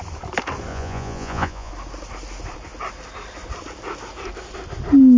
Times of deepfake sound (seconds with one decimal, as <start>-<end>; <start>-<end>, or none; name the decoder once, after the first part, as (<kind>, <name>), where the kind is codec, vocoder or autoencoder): 0.7-1.7 (vocoder, Vocos)